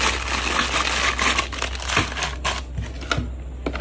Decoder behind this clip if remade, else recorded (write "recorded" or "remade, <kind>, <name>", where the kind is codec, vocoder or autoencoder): recorded